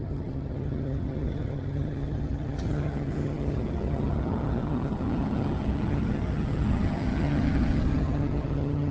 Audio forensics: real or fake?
fake